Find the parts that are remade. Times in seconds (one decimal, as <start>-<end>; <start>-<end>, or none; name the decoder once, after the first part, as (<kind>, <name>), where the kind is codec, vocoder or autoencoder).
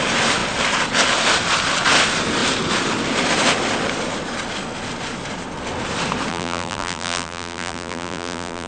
6.3-8.7 (vocoder, BigVGAN v2)